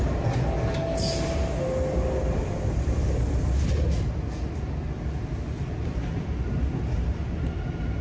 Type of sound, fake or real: real